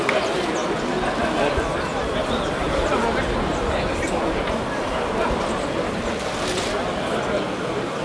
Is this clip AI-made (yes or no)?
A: no